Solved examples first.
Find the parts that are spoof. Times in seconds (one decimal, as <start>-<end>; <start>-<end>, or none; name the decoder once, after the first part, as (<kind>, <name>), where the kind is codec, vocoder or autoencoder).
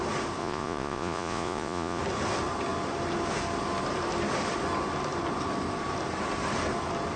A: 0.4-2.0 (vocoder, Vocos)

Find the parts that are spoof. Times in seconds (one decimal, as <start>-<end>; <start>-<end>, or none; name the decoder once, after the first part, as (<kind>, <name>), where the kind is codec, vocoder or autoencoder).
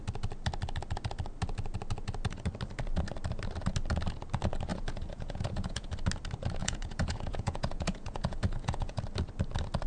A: 4.7-5.9 (vocoder, Vocos); 6.6-9.0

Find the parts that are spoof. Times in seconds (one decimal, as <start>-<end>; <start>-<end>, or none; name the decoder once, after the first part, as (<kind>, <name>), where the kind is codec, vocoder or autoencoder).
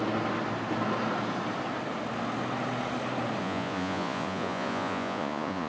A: 3.4-5.7 (vocoder, Vocos)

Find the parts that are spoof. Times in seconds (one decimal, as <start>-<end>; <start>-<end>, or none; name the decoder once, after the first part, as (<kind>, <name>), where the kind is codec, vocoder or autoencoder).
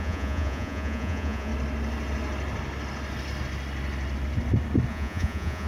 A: 0.0-1.5 (vocoder, Vocos); 4.9-5.7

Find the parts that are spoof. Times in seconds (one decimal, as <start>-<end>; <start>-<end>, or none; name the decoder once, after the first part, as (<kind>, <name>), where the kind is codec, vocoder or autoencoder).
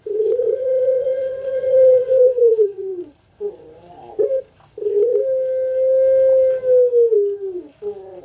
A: 0.0-2.9 (vocoder, Vocos)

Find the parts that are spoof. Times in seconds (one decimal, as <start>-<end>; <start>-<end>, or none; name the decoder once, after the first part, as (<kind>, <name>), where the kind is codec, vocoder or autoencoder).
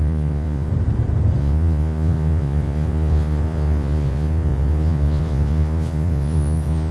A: 0.0-0.7 (vocoder, Vocos); 1.4-6.9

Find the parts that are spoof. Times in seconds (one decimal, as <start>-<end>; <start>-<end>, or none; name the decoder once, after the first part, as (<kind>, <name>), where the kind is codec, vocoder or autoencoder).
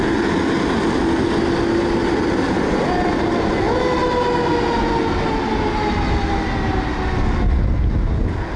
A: none